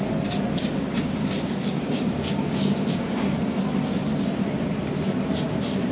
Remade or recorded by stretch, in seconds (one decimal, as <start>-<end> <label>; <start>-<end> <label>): 0.0-0.6 recorded; 0.6-3.6 remade; 3.6-5.9 recorded